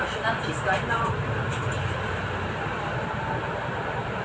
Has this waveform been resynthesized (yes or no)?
yes